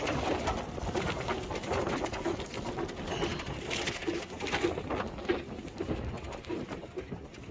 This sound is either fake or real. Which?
real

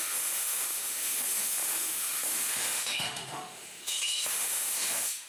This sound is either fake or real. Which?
fake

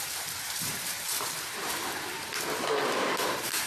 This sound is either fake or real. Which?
fake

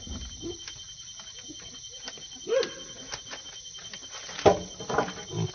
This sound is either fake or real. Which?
real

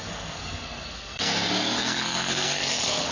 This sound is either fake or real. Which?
fake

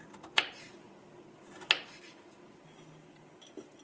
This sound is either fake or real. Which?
real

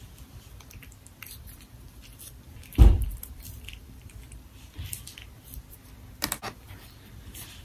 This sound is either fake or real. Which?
fake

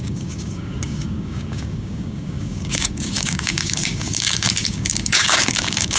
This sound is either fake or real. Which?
fake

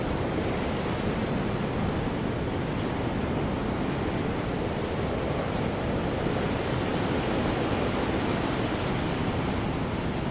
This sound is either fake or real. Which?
real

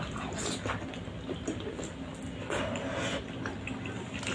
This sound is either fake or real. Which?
real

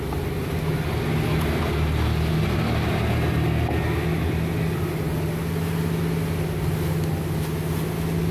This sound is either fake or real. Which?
real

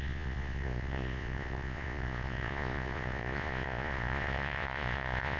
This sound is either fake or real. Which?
fake